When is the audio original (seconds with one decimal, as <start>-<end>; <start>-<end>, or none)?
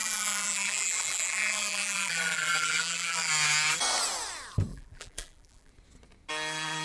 3.3-4.7; 5.7-6.8